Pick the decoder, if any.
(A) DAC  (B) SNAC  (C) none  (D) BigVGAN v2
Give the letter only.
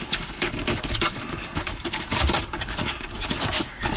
A